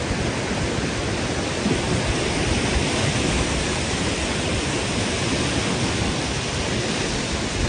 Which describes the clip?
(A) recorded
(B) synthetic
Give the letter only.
A